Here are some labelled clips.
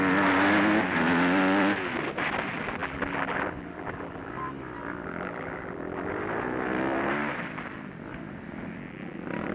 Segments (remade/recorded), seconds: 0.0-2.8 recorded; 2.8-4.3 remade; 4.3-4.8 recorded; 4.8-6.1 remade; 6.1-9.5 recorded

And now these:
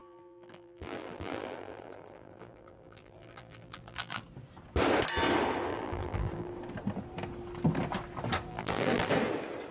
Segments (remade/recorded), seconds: 0.0-4.2 remade; 4.2-5.7 recorded; 5.7-6.5 remade; 6.5-8.5 recorded; 8.5-9.1 remade; 9.1-9.7 recorded

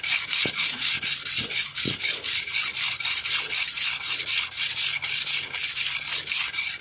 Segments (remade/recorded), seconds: 0.0-6.8 recorded

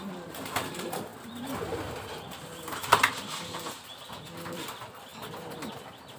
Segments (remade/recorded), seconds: 0.0-1.1 remade; 1.1-3.7 recorded; 3.7-6.2 remade